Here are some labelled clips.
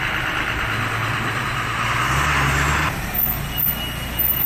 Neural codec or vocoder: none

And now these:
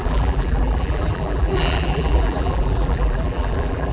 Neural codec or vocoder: vocoder, BigVGAN v2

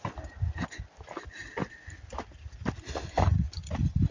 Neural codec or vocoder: none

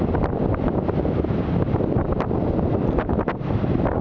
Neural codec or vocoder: none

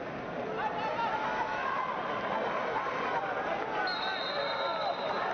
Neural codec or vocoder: none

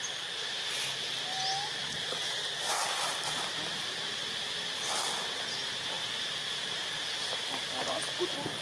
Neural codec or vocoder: none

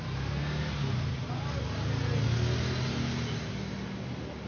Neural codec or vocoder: none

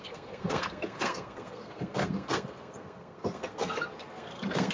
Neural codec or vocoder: codec, SNAC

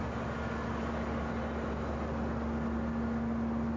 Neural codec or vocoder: none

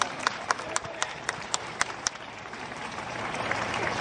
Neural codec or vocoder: vocoder, BigVGAN v2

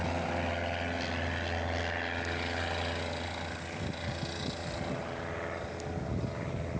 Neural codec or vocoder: none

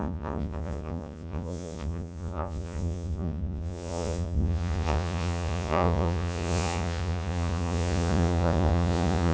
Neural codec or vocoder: vocoder, Vocos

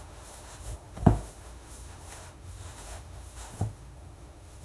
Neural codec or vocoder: autoencoder, DAC-VAE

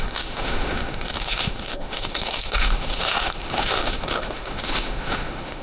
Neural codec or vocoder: autoencoder, DAC-VAE